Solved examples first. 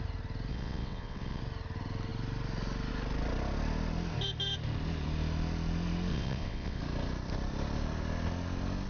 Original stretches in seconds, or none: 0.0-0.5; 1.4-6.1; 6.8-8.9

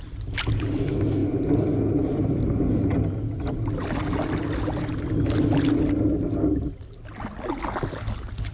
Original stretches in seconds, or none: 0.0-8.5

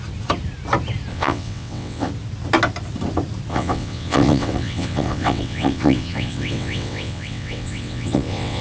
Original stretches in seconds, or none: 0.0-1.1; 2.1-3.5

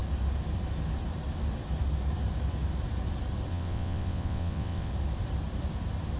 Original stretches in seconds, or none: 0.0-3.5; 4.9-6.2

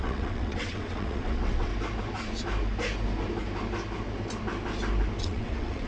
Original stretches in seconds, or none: 1.7-5.2

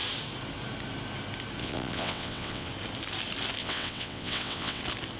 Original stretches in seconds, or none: 0.0-1.6; 2.7-3.6; 4.8-5.2

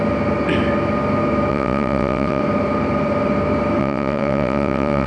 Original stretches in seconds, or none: 0.0-1.5; 2.4-3.8